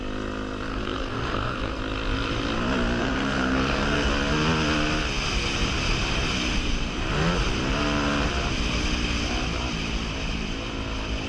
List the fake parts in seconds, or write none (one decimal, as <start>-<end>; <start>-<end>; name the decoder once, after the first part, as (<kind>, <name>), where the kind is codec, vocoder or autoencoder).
0.7-1.8 (codec, SNAC); 3.0-4.1